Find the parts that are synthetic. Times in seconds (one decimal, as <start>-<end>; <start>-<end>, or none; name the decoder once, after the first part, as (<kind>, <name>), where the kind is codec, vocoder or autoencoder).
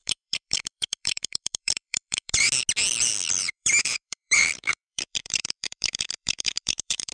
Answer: 0.0-2.5 (vocoder, BigVGAN v2); 3.4-7.1